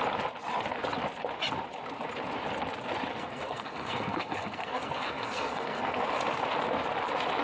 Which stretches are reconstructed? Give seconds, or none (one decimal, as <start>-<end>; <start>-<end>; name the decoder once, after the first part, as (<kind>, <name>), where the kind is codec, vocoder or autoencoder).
3.1-6.0 (codec, SNAC)